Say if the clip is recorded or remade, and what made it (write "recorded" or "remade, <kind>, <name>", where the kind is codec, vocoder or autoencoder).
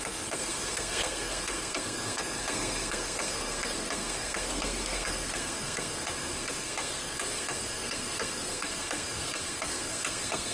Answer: remade, codec, SNAC